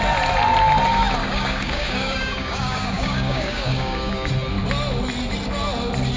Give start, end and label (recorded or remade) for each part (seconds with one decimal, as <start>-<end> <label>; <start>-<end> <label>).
0.0-1.2 recorded; 1.2-4.3 remade; 4.3-6.2 recorded